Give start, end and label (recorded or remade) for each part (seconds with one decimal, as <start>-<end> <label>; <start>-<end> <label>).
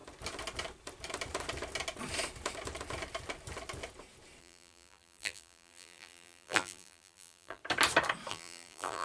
0.0-4.4 recorded; 4.4-7.6 remade; 7.6-8.3 recorded; 8.3-9.0 remade